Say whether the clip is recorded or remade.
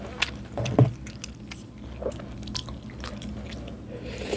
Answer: recorded